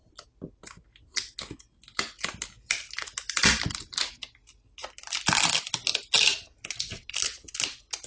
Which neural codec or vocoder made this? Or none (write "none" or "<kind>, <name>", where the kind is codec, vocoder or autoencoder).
none